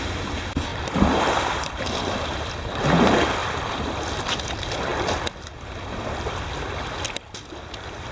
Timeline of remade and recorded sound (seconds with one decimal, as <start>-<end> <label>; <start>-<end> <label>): 0.0-0.7 recorded; 0.7-2.5 remade; 2.5-3.4 recorded; 3.4-4.2 remade; 4.2-4.9 recorded; 4.9-5.5 remade; 5.5-8.1 recorded